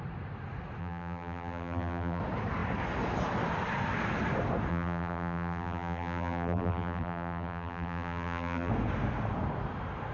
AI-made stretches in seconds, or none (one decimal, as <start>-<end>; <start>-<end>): 0.8-2.2; 4.7-8.7